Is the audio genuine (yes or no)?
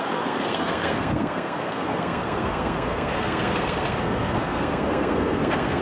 no